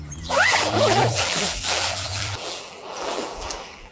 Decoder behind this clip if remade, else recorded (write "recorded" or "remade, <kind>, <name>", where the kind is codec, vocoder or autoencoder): remade, vocoder, BigVGAN v2